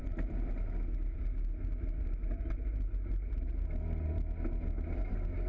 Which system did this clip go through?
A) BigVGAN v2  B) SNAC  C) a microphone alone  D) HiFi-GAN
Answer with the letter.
C